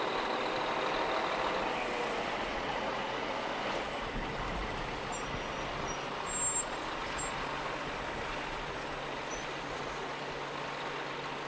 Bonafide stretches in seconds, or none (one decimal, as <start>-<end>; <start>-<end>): 0.0-2.5; 3.3-11.5